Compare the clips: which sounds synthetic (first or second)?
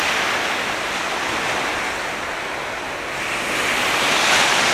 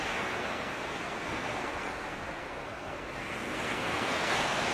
second